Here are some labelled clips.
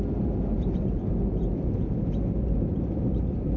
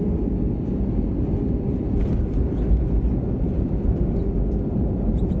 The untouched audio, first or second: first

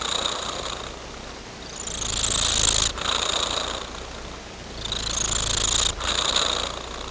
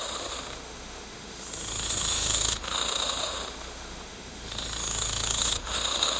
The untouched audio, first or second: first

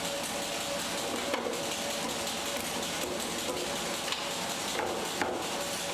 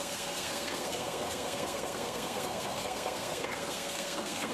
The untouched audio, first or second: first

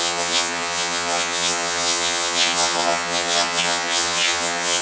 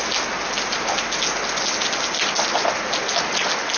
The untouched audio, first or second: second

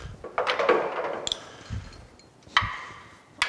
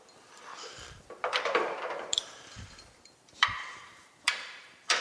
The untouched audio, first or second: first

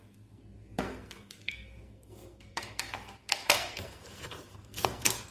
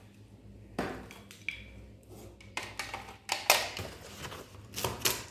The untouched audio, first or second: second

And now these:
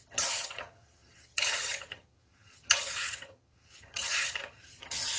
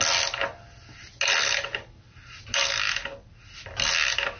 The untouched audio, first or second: second